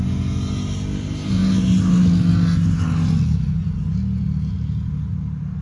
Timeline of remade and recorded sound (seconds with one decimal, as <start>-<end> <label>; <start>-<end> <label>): 0.0-5.6 recorded